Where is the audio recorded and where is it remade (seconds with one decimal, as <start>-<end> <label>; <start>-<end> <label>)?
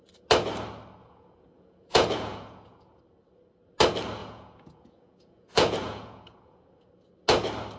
0.0-1.0 recorded; 1.0-3.0 remade; 3.0-4.2 recorded; 4.2-6.9 remade; 6.9-7.8 recorded